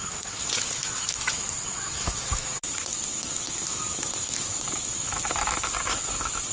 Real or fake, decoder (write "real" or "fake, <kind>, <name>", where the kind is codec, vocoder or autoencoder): fake, autoencoder, DAC-VAE